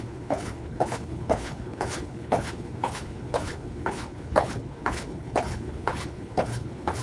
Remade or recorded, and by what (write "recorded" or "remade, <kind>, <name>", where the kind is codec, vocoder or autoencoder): remade, codec, HILCodec